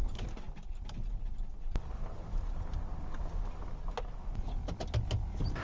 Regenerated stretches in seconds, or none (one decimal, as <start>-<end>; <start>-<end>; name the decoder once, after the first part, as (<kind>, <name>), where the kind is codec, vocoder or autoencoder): 0.0-0.8 (vocoder, BigVGAN v2); 1.3-3.2